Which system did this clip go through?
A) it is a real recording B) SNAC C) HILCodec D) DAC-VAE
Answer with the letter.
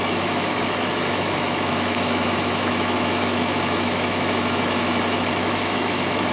D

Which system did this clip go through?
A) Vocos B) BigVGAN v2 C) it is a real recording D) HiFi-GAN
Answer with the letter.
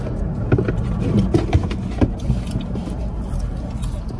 C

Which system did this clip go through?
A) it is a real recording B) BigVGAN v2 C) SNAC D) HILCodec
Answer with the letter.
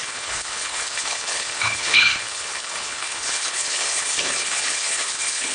D